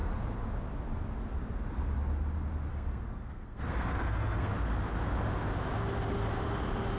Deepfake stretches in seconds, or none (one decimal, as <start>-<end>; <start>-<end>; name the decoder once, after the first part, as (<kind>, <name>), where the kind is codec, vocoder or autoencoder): 2.7-4.5 (codec, SNAC)